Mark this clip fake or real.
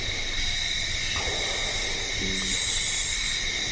real